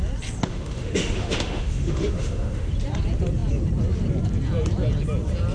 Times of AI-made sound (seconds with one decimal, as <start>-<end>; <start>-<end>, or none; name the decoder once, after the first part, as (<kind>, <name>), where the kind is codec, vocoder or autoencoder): 0.5-2.7 (autoencoder, DAC-VAE)